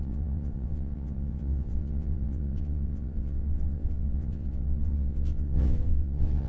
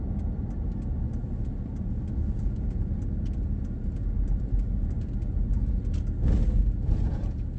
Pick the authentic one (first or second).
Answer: second